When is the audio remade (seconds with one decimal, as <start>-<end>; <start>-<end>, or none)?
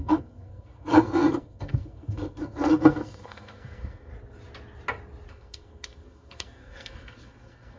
0.0-4.1; 5.3-7.8